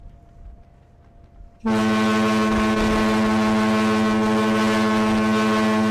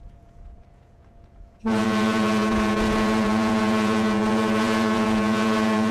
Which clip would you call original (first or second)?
first